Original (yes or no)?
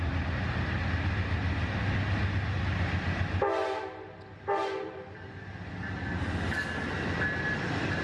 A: yes